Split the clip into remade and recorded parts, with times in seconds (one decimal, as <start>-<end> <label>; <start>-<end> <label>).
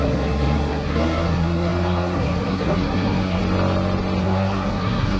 0.0-3.4 remade; 3.4-4.2 recorded; 4.2-5.2 remade